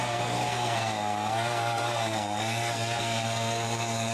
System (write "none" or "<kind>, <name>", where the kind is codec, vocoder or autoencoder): codec, SNAC